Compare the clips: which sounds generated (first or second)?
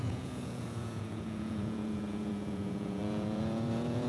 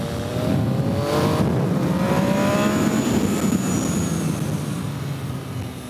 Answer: first